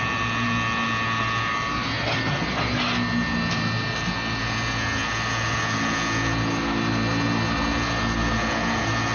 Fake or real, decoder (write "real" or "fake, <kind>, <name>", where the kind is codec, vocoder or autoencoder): real